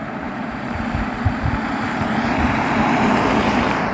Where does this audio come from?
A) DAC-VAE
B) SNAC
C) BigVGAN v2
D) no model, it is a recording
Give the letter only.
C